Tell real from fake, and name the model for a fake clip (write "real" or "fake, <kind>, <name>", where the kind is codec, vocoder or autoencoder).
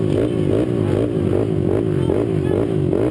real